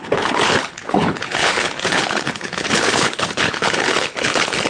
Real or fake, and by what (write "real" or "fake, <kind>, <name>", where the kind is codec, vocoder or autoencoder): fake, codec, HILCodec